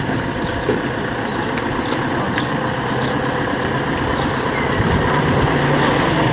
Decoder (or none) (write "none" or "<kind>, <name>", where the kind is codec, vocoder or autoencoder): none